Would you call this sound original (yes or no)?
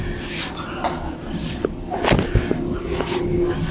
yes